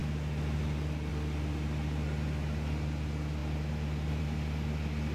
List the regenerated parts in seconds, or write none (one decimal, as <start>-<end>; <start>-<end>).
none

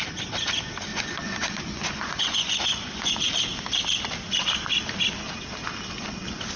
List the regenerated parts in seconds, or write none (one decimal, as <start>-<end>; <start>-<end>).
0.9-3.3

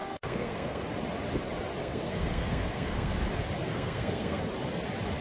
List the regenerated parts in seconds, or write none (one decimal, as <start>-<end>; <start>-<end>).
0.0-0.8; 1.8-3.2; 3.7-4.4

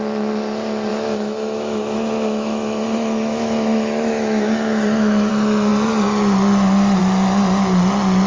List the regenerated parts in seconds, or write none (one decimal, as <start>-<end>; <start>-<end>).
0.9-5.3

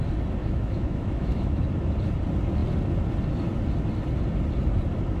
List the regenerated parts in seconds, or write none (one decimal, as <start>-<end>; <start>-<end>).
0.4-1.7

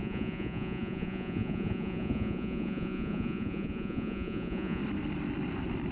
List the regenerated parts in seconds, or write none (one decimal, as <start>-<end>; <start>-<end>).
0.0-4.8